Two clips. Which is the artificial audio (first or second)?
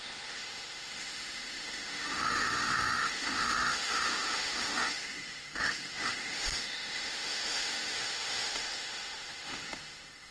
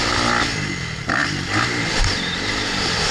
first